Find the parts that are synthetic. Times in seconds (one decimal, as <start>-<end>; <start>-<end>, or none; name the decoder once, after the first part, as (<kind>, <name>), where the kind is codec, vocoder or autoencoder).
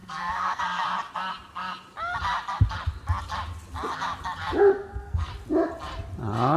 0.0-0.6 (codec, SNAC); 4.7-5.3